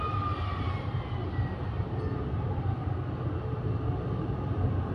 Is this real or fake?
real